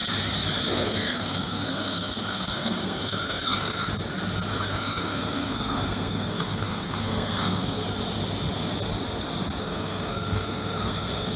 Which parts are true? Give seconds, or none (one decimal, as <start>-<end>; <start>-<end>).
0.0-0.7; 3.9-4.5; 7.8-9.6